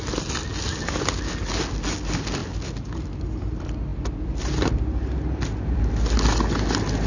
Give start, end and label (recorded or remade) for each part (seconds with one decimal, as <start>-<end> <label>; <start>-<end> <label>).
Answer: 0.0-7.1 recorded

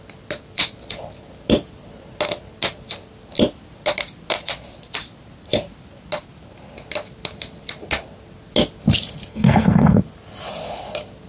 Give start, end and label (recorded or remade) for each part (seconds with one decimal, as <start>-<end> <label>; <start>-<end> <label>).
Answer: 0.0-9.3 recorded; 9.3-10.0 remade; 10.0-11.3 recorded